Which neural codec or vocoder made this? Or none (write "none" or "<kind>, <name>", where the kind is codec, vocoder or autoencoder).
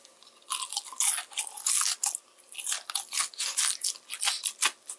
none